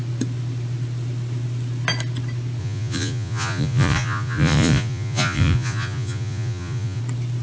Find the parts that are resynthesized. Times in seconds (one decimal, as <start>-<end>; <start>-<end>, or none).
2.6-7.0